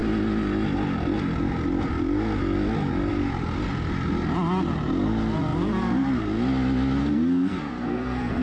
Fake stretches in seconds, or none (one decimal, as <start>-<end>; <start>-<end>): 7.0-8.4